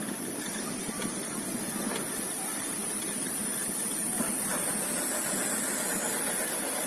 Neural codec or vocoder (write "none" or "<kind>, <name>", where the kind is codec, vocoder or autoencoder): vocoder, BigVGAN v2